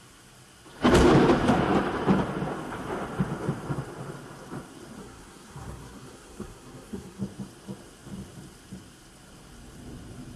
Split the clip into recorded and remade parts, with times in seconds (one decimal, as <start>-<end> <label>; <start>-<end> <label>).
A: 0.0-5.0 recorded; 5.0-7.2 remade; 7.2-10.4 recorded

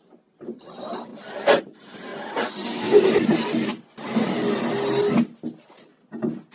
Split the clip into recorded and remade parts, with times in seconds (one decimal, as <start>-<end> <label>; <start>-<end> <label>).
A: 0.0-1.1 remade; 1.1-1.6 recorded; 1.6-2.1 remade; 2.1-2.9 recorded; 2.9-3.7 remade; 3.7-6.5 recorded

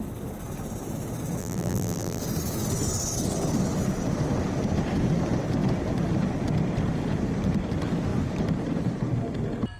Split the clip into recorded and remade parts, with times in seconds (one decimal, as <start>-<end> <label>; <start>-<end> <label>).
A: 0.0-1.4 recorded; 1.4-2.2 remade; 2.2-9.8 recorded

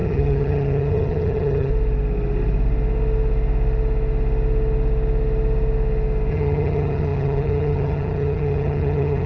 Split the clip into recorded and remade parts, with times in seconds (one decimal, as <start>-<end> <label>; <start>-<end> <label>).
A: 0.0-1.7 remade; 1.7-6.3 recorded; 6.3-9.3 remade

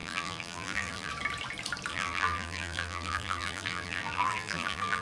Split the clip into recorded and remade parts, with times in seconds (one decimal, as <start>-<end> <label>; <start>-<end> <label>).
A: 0.0-1.1 remade; 1.1-1.9 recorded; 1.9-5.0 remade

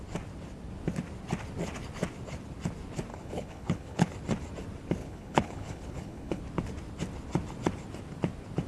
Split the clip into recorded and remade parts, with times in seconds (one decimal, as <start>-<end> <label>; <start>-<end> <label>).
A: 0.0-3.1 recorded; 3.1-4.1 remade; 4.1-5.0 recorded; 5.0-6.4 remade; 6.4-8.7 recorded

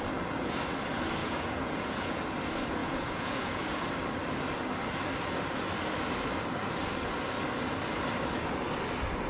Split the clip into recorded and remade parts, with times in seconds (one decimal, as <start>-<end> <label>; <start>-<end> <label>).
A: 0.0-1.2 recorded; 1.2-2.2 remade; 2.2-2.8 recorded; 2.8-3.8 remade; 3.8-9.3 recorded

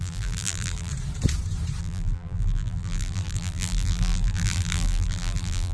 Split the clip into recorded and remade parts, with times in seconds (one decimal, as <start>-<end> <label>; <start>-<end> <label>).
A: 0.0-0.9 remade; 0.9-1.8 recorded; 1.8-5.7 remade